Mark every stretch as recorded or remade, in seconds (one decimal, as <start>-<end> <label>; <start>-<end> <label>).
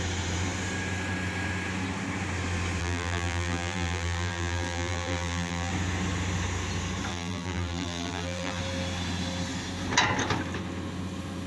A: 0.0-2.8 recorded; 2.8-5.7 remade; 5.7-7.1 recorded; 7.1-8.6 remade; 8.6-11.5 recorded